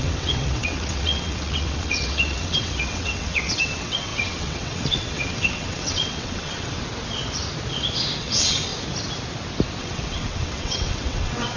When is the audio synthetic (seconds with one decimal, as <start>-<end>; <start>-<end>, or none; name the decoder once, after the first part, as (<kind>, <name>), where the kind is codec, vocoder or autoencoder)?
0.0-6.8 (vocoder, WaveNeXt); 8.2-8.7; 9.8-11.6